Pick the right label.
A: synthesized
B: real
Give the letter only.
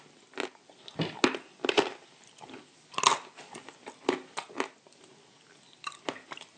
B